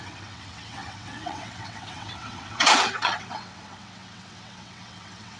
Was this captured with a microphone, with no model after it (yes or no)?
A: no